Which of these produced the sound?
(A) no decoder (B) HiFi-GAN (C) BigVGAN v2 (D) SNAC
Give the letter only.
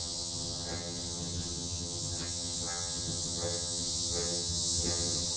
B